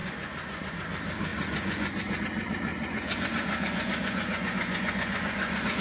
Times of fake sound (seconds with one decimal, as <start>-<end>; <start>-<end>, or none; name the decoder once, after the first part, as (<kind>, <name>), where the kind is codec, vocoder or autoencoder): 0.0-0.7 (vocoder, Vocos); 1.3-2.2; 2.7-5.8